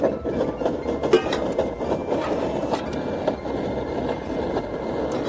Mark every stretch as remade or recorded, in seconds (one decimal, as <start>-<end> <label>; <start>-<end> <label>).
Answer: 0.0-5.3 recorded